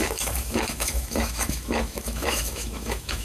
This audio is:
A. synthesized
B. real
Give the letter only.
A